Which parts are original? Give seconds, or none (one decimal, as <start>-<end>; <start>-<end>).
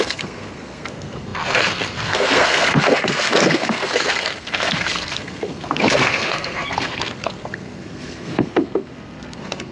none